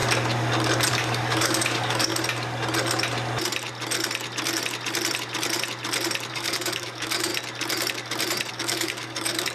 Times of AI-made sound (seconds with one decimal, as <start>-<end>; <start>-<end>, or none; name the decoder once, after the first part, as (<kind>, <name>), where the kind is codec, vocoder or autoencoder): 0.9-2.1 (codec, DAC); 6.3-7.3; 8.5-9.5